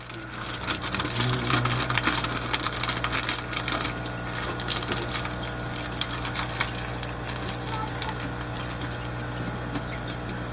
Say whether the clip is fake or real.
real